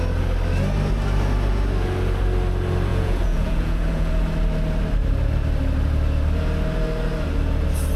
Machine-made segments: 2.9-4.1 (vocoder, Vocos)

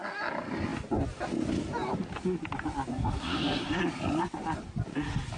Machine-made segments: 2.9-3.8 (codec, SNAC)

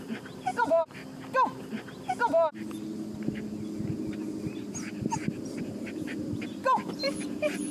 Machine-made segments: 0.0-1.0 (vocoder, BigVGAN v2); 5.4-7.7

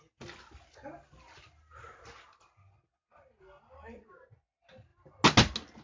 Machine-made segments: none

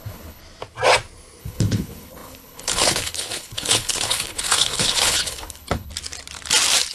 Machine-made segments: 0.0-0.4 (codec, HILCodec); 1.4-5.9